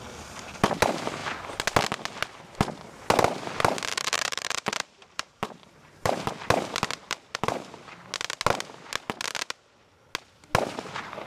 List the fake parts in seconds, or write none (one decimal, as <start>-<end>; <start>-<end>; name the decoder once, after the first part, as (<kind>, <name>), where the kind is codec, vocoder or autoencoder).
3.9-6.3 (vocoder, BigVGAN v2); 7.0-7.8